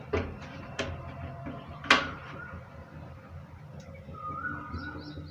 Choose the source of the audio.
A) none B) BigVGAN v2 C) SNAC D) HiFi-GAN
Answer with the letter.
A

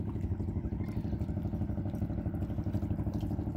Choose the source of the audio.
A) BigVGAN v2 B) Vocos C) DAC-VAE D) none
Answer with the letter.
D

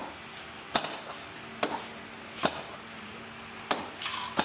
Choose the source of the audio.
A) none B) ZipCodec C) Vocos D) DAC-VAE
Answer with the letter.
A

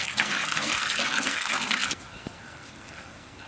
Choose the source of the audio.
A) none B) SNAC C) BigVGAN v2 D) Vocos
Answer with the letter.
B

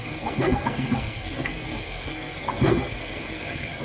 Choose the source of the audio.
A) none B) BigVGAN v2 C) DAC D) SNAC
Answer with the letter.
D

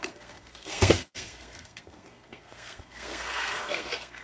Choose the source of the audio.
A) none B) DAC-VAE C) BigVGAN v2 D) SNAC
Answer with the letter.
D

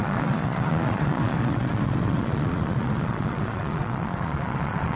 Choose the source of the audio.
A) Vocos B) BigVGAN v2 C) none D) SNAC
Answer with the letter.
A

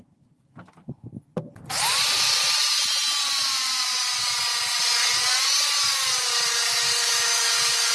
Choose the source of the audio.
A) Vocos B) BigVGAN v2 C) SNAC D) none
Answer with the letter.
D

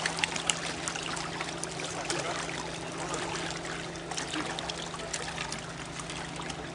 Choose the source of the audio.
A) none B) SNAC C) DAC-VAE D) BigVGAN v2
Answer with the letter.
A